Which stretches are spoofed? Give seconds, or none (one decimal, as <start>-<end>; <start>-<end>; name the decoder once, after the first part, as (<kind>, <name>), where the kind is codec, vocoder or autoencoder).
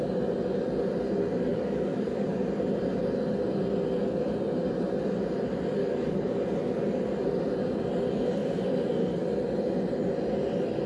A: 1.5-2.3 (codec, DAC); 5.8-6.4